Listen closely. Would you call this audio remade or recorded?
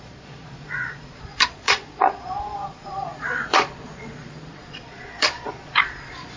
remade